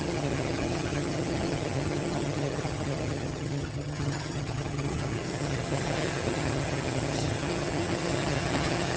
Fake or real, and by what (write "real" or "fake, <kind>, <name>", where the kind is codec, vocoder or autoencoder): fake, vocoder, HiFi-GAN